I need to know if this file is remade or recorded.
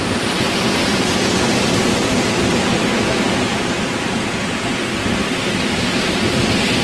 recorded